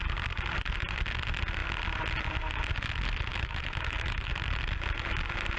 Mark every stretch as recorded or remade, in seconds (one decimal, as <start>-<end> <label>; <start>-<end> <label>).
0.0-3.3 recorded; 3.3-4.3 remade; 4.3-5.6 recorded